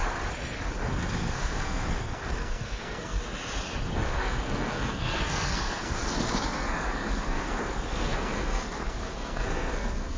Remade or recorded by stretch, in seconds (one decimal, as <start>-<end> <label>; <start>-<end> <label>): 0.0-0.9 recorded; 0.9-3.2 remade; 3.2-3.8 recorded; 3.8-10.2 remade